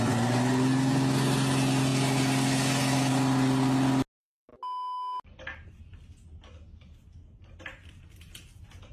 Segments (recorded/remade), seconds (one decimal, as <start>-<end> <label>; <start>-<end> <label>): 0.0-8.9 recorded